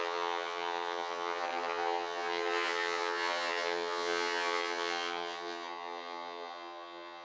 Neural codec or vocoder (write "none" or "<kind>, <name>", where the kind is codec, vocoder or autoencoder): vocoder, HiFi-GAN